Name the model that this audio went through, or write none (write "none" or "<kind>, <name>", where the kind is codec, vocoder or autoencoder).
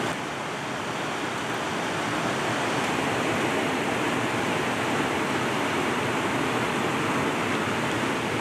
none